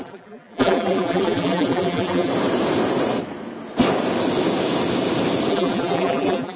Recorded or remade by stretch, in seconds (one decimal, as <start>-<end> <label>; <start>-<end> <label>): 0.0-2.3 remade; 2.3-5.5 recorded; 5.5-6.6 remade

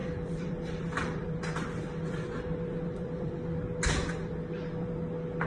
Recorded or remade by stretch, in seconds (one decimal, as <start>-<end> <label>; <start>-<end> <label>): 0.0-3.3 remade; 3.3-5.5 recorded

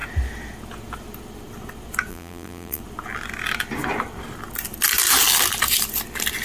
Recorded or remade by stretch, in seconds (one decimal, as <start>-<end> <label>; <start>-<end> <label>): 0.0-2.1 recorded; 2.1-2.8 remade; 2.8-6.4 recorded

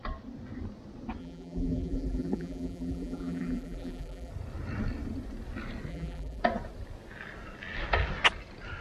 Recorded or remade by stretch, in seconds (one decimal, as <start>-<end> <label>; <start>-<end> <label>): 0.0-1.2 recorded; 1.2-4.3 remade; 4.3-5.9 recorded; 5.9-6.4 remade; 6.4-8.8 recorded